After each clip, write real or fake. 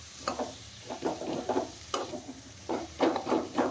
fake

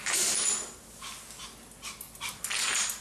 real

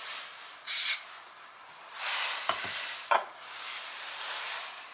real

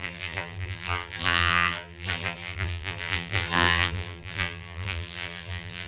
fake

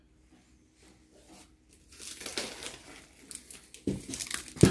real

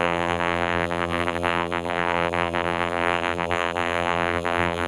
fake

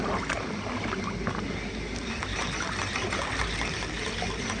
real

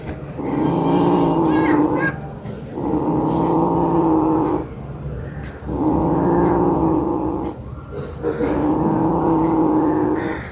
fake